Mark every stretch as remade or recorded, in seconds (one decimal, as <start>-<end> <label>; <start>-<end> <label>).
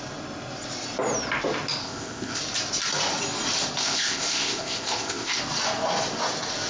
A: 0.0-1.8 recorded; 1.8-2.4 remade; 2.4-3.8 recorded; 3.8-5.4 remade; 5.4-6.7 recorded